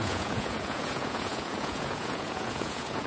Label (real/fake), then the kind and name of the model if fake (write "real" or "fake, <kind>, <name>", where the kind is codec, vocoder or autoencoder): fake, vocoder, Vocos